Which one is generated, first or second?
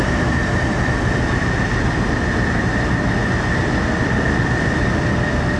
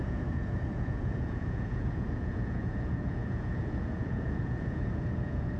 second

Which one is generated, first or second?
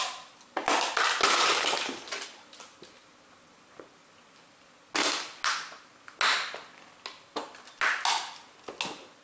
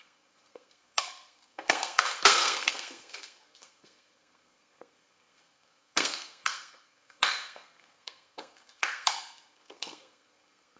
second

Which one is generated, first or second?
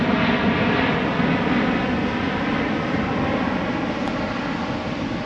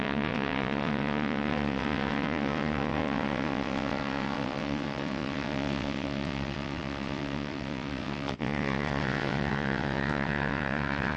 second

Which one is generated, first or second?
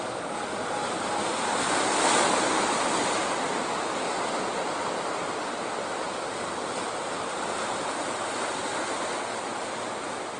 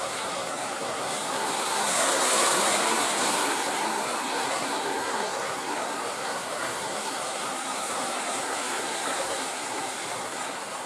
second